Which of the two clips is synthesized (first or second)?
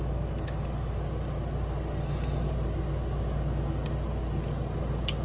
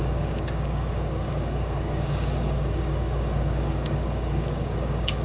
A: second